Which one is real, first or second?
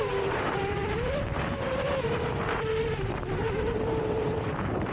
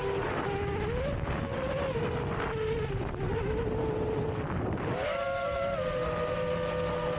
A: second